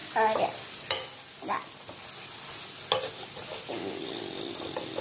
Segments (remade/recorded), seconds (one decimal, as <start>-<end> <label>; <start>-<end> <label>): 0.0-5.0 recorded